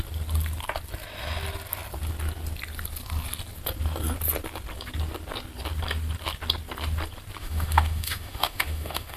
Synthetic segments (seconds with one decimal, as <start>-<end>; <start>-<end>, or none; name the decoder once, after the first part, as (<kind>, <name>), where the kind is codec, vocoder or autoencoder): 7.4-9.2 (autoencoder, DAC-VAE)